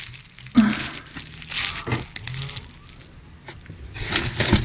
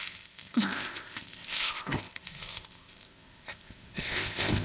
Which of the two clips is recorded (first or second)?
first